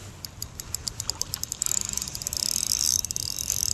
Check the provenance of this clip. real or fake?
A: fake